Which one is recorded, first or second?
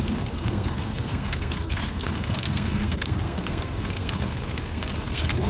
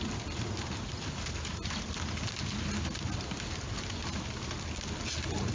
second